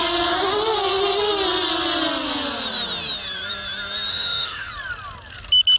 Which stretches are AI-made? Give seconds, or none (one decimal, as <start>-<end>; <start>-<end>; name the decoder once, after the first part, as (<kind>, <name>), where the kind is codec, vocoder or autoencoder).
4.1-4.7 (autoencoder, DAC-VAE)